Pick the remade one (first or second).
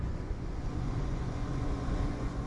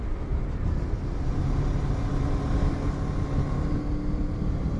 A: first